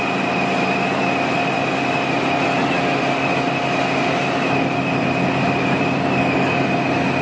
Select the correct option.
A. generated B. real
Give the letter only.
B